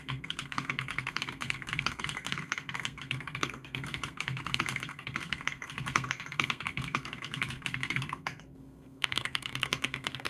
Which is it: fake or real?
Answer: fake